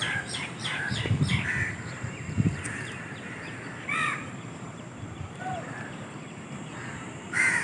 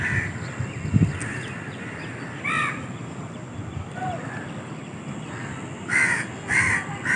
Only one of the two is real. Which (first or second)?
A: second